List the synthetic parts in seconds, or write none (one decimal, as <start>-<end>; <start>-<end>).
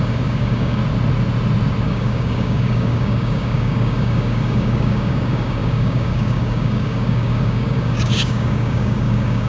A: 0.0-0.8; 1.8-9.5